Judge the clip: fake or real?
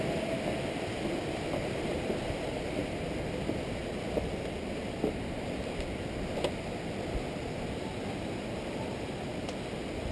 fake